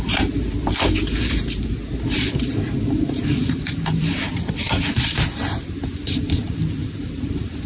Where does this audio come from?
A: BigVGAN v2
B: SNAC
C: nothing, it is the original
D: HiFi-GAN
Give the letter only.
A